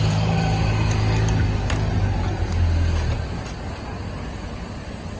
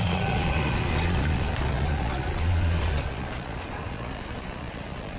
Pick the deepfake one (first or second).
second